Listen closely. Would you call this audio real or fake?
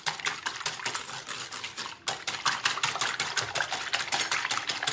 real